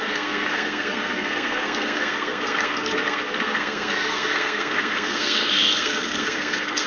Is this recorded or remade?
remade